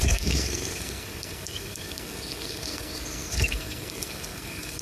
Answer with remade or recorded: remade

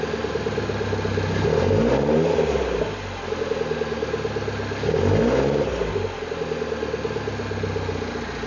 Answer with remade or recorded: recorded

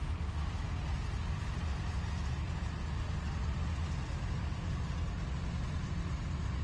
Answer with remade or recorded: recorded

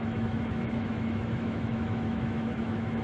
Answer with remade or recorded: remade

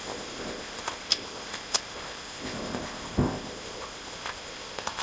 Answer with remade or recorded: remade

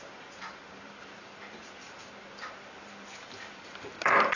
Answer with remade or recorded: remade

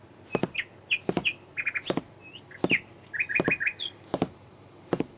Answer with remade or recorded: recorded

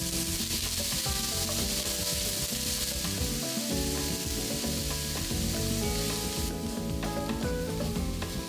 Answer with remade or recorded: recorded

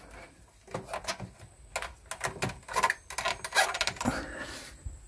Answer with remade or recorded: recorded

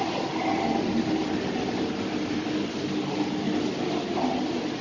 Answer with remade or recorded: recorded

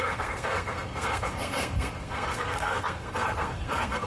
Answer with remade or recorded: remade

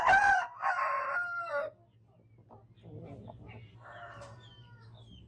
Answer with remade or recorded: recorded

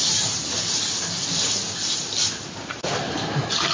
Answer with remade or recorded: recorded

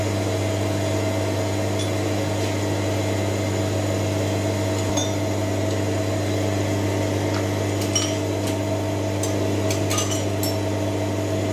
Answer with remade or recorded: recorded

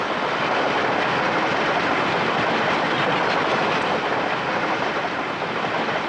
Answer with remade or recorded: recorded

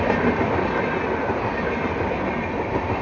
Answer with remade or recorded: recorded